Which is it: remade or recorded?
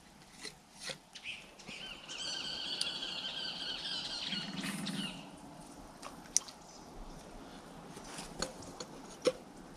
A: recorded